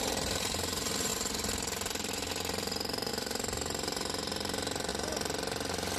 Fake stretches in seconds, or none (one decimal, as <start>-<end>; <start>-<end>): 0.0-1.1; 3.1-4.9